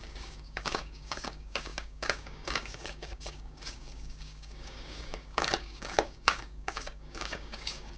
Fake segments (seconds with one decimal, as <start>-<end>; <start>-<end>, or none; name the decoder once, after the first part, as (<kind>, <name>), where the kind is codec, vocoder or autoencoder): 0.0-8.0 (codec, DAC)